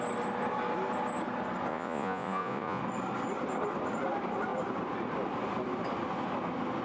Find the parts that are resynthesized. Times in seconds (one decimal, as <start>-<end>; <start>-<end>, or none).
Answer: 1.7-2.8